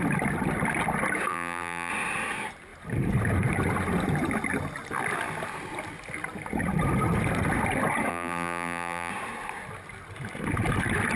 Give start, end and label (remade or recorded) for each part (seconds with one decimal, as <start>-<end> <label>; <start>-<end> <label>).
0.0-1.3 recorded; 1.3-1.9 remade; 1.9-8.1 recorded; 8.1-9.1 remade; 9.1-11.2 recorded